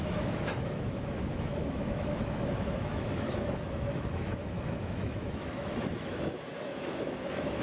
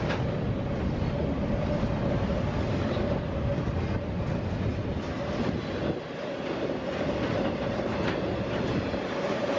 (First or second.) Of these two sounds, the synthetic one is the first